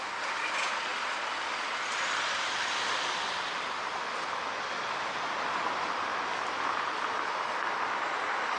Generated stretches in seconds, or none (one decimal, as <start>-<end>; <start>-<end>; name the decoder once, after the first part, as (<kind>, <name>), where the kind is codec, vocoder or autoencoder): none

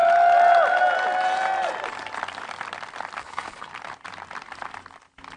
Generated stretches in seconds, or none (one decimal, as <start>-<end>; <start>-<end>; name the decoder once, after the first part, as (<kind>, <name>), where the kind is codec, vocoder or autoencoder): 3.2-3.7 (codec, HILCodec)

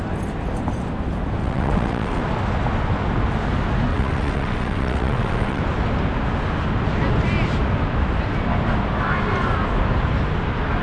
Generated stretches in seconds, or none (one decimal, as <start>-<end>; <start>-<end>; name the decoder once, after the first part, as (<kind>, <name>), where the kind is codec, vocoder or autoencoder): 1.4-2.2 (vocoder, WaveNeXt); 3.9-5.6

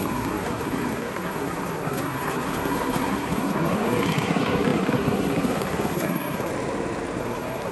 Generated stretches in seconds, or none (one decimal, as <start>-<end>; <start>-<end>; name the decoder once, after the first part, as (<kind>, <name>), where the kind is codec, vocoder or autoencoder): 0.0-6.5 (codec, SNAC); 7.2-7.7

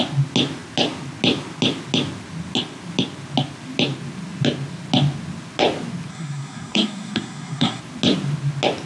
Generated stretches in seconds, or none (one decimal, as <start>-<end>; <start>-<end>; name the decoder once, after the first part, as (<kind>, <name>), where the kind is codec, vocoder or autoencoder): 6.1-7.8 (codec, SNAC)

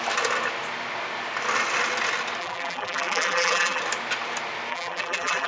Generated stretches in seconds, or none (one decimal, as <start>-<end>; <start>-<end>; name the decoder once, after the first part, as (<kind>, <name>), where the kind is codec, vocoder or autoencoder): 2.4-3.8 (vocoder, BigVGAN v2); 4.7-5.5

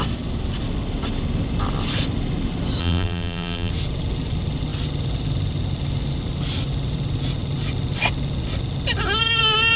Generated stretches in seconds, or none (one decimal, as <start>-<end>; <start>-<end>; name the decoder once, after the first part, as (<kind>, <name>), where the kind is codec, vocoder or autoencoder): 2.8-3.7 (vocoder, BigVGAN v2)